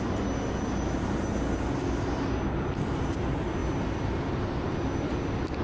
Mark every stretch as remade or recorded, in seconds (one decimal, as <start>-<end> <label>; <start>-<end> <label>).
0.0-5.6 recorded